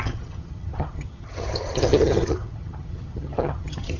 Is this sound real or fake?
fake